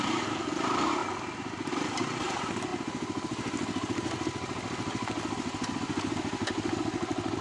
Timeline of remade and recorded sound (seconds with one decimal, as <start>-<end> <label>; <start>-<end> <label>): 0.0-1.0 remade; 1.0-2.2 recorded; 2.2-2.7 remade; 2.7-7.4 recorded